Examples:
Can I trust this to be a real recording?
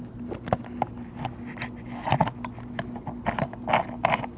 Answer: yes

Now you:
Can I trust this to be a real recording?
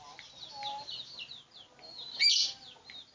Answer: yes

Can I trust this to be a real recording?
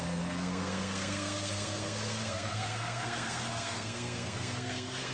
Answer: no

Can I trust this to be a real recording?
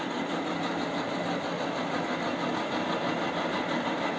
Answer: yes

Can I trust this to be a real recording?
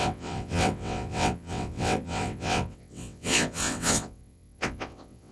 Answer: no